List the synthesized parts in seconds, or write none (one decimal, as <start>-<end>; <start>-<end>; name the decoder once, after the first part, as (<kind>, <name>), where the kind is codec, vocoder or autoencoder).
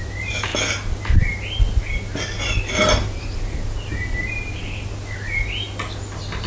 none